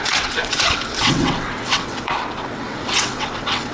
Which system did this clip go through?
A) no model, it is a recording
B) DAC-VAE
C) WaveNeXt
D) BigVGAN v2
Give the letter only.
C